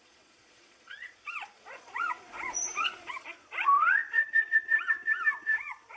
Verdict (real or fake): fake